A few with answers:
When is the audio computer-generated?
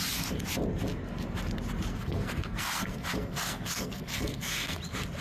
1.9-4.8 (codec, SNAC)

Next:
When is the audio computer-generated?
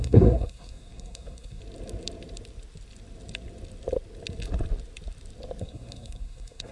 0.0-1.6 (codec, SNAC); 5.6-6.7